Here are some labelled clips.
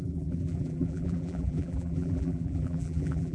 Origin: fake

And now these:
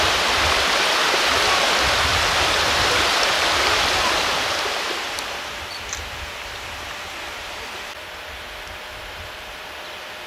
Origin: fake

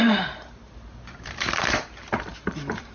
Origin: fake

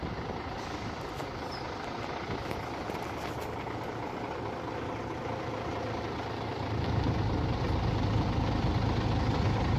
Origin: real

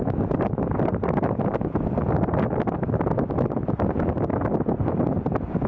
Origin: real